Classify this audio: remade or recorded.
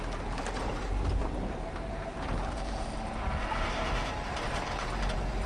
remade